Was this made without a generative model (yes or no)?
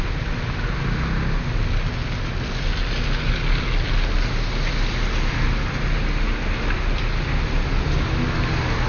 yes